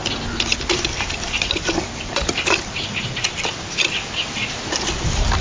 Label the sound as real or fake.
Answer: real